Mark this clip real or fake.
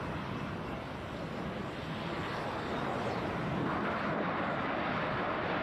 real